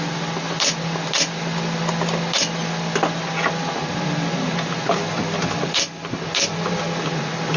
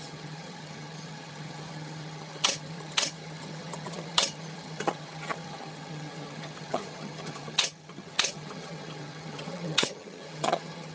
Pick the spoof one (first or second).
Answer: second